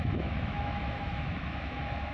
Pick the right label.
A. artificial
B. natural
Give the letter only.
A